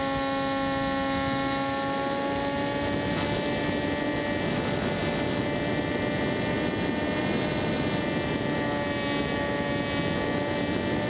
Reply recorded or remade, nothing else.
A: recorded